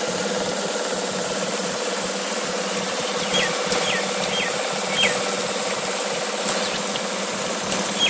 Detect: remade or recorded recorded